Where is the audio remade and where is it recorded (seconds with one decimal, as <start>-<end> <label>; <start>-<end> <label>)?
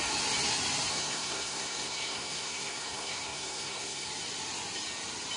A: 0.0-0.9 recorded; 0.9-4.1 remade; 4.1-5.4 recorded